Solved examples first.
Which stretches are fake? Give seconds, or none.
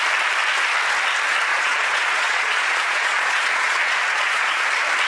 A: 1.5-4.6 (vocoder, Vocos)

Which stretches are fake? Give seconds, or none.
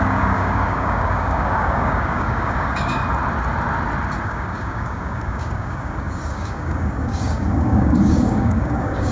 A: 0.0-3.0 (codec, DAC); 4.2-9.1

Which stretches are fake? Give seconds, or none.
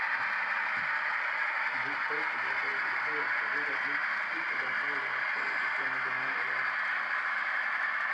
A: none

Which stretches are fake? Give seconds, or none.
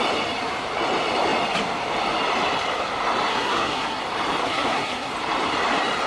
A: 3.3-4.0 (codec, SNAC); 4.4-5.1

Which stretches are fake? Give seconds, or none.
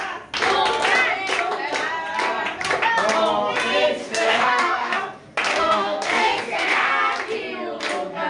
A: 4.0-5.0 (codec, DAC); 5.5-6.9